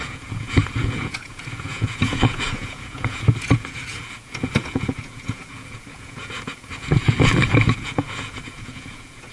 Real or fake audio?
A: fake